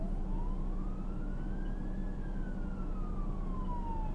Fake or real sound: real